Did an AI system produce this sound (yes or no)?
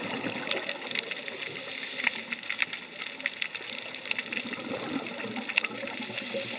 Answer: no